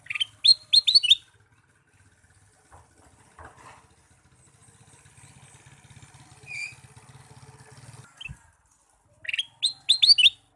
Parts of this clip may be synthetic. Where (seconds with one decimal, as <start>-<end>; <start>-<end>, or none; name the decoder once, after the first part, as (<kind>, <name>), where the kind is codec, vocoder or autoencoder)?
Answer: none